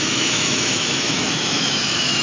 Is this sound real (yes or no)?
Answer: no